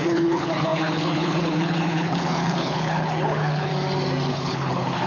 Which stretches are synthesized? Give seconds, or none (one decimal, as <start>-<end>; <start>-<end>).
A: 0.0-3.7; 4.3-5.1